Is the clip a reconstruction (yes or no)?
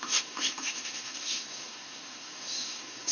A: yes